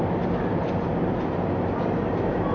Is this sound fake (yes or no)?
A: no